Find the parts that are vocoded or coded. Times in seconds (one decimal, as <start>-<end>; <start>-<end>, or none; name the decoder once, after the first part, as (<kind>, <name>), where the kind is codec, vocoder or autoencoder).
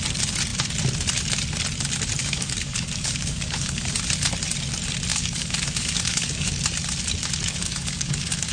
2.2-3.9 (codec, DAC); 5.1-6.5; 7.6-8.5